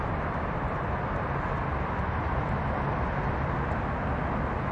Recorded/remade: recorded